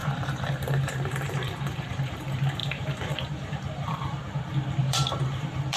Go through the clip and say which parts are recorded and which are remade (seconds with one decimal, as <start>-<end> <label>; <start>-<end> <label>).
0.0-4.2 remade; 4.2-4.8 recorded; 4.8-5.8 remade

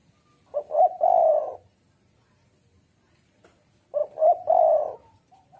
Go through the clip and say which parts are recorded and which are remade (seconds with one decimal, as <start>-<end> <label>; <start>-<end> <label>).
0.0-4.0 recorded; 4.0-4.6 remade; 4.6-5.6 recorded

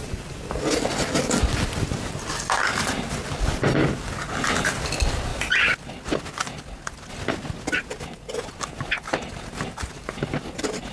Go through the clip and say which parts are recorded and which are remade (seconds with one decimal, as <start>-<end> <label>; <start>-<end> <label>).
0.0-10.9 recorded